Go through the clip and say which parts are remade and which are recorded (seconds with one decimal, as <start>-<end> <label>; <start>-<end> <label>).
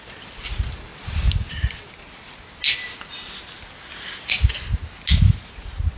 0.0-6.0 recorded